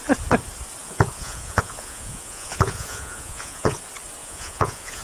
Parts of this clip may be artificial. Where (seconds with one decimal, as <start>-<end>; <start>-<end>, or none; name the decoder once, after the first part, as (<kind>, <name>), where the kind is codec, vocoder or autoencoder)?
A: 0.8-3.8 (vocoder, Vocos); 4.2-5.0